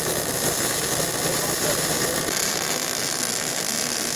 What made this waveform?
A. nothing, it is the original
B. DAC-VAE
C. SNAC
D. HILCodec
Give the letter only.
A